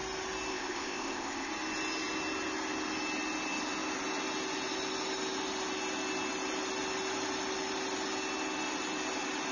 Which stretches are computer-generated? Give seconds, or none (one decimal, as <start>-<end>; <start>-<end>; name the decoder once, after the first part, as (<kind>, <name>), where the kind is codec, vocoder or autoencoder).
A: 0.5-1.5 (codec, ZipCodec)

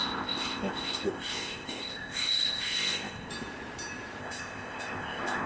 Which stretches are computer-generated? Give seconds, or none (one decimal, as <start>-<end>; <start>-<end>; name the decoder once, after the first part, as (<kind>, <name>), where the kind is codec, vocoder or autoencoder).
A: 0.0-3.3 (codec, ZipCodec); 4.2-5.5

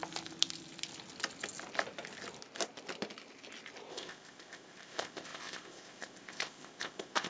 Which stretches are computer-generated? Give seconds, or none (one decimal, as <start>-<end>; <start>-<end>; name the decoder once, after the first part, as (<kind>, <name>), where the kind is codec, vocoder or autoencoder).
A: 3.9-7.3 (codec, ZipCodec)

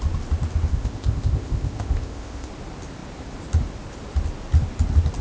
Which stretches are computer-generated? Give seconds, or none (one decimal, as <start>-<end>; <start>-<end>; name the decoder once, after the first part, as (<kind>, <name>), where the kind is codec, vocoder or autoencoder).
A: 0.7-2.5 (codec, ZipCodec)

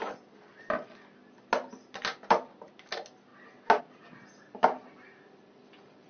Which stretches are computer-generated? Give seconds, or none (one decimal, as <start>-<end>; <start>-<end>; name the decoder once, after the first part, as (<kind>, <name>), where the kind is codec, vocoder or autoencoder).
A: none

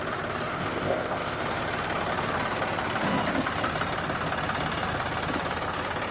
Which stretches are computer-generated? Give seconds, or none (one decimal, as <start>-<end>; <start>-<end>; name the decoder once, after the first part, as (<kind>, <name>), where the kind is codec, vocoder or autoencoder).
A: 0.5-1.4 (codec, ZipCodec)